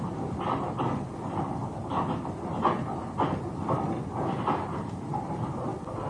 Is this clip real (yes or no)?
yes